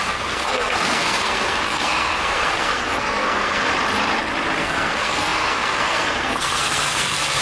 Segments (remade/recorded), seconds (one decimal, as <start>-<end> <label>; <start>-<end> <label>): 0.0-3.7 remade; 3.7-4.6 recorded; 4.6-7.4 remade